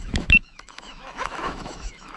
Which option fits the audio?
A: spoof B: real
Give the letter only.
A